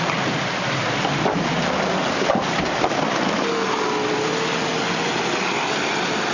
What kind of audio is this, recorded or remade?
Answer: recorded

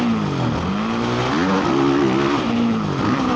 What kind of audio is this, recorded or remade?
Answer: recorded